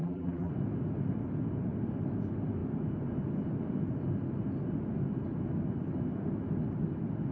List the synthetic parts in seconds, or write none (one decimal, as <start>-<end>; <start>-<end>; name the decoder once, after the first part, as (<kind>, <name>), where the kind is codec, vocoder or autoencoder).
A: 0.0-0.5 (vocoder, BigVGAN v2)